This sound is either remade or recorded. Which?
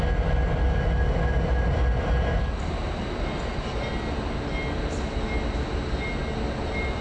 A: recorded